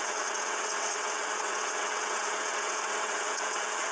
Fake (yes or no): yes